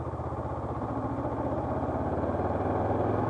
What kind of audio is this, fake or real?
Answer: real